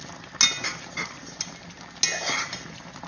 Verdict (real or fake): real